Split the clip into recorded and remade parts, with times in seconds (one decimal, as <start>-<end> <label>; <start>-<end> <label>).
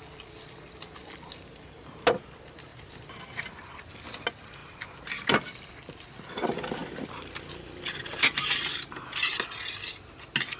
0.0-2.7 recorded; 2.7-3.5 remade; 3.5-10.6 recorded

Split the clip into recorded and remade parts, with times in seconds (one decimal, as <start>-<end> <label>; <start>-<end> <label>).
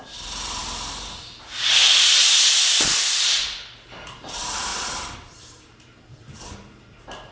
0.0-0.6 remade; 0.6-1.4 recorded; 1.4-1.8 remade; 1.8-3.0 recorded; 3.0-7.3 remade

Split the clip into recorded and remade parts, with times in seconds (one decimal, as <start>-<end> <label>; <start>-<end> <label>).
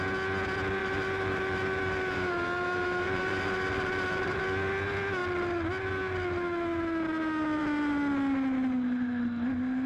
0.0-0.8 recorded; 0.8-4.4 remade; 4.4-9.9 recorded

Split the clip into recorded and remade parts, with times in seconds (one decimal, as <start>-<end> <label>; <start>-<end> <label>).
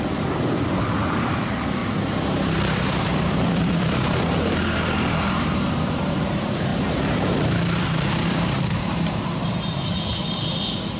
0.0-1.8 recorded; 1.8-6.3 remade; 6.3-6.7 recorded; 6.7-9.8 remade; 9.8-11.0 recorded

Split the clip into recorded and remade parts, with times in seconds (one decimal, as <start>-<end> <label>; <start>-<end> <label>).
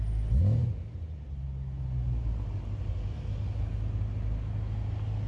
0.0-5.3 recorded